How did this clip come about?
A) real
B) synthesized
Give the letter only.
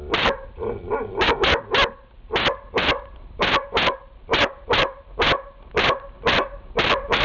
A